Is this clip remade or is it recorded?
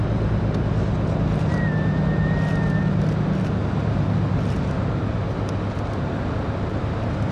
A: recorded